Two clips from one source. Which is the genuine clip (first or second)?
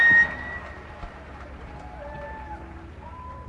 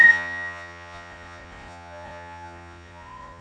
first